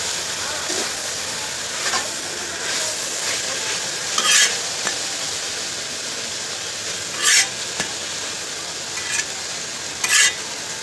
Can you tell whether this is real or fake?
real